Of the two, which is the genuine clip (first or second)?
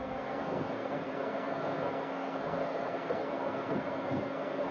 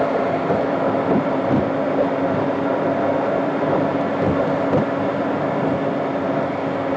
second